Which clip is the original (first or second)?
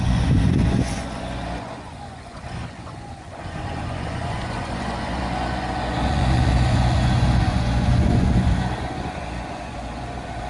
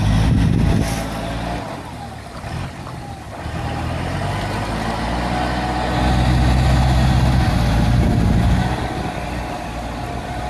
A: second